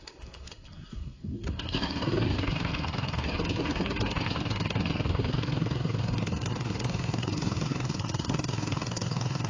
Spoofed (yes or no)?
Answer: yes